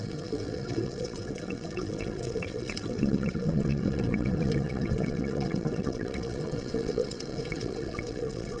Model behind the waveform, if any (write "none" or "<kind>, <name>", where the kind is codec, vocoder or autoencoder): vocoder, WaveNeXt